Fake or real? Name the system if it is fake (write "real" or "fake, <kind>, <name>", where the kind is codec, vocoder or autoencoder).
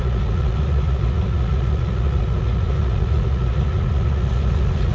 fake, vocoder, Vocos